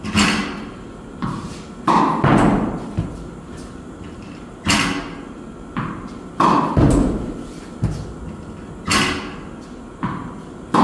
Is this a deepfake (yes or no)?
no